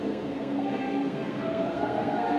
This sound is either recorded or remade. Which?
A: remade